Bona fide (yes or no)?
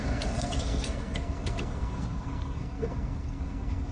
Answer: no